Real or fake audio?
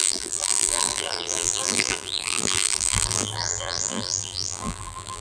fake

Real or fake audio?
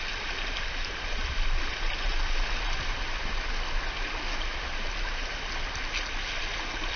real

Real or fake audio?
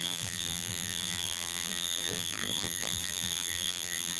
fake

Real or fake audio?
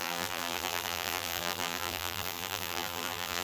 fake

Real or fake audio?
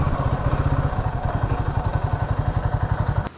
real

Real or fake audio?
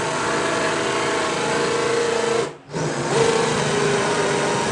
real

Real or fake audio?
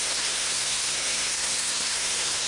fake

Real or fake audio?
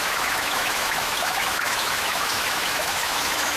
fake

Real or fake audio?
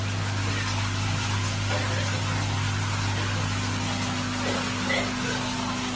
real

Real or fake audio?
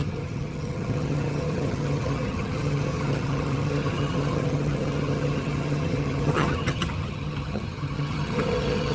fake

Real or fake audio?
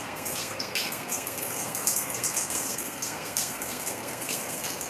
fake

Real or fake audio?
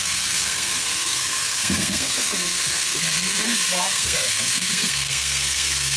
fake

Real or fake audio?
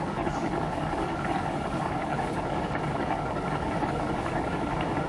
fake